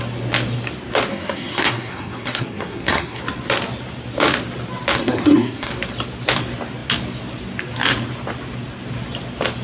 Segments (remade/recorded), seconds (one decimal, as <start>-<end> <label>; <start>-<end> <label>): 0.0-1.1 recorded; 1.1-3.2 remade; 3.2-5.0 recorded; 5.0-5.7 remade; 5.7-9.6 recorded